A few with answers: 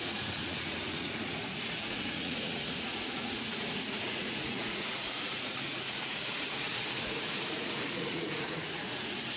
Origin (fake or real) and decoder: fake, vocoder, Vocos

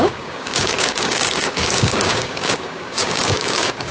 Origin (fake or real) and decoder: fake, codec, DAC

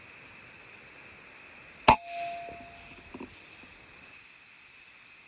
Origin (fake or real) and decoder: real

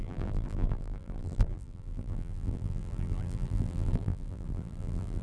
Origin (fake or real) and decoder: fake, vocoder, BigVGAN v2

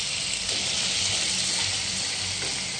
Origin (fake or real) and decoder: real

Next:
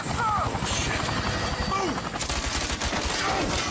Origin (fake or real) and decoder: real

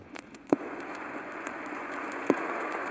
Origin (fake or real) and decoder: fake, vocoder, Vocos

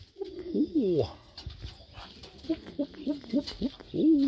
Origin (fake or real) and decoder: real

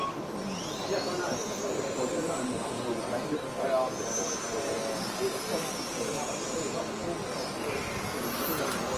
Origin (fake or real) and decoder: real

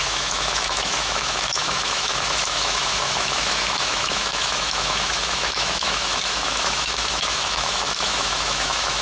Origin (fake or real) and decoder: fake, autoencoder, DAC-VAE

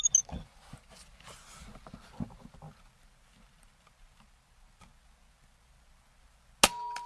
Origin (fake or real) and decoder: real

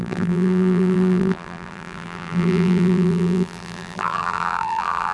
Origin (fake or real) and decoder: fake, vocoder, BigVGAN v2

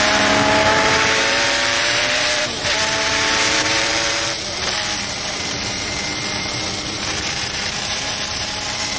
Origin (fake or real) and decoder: fake, vocoder, BigVGAN v2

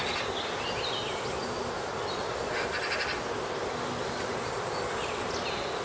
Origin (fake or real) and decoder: real